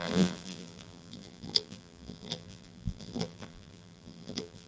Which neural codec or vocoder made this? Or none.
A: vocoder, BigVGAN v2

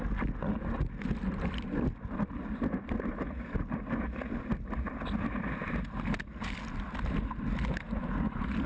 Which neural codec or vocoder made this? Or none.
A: none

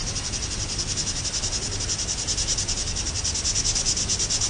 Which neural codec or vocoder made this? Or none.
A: none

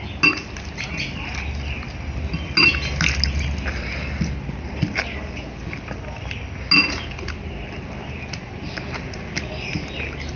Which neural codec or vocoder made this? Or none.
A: none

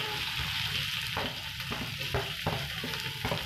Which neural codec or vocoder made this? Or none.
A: vocoder, BigVGAN v2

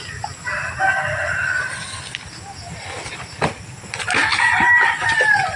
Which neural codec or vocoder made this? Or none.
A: none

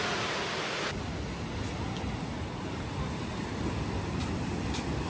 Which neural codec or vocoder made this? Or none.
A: none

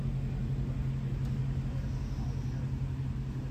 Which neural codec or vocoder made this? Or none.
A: none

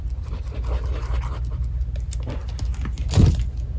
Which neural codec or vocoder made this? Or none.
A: none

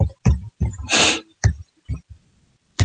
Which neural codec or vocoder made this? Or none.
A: vocoder, BigVGAN v2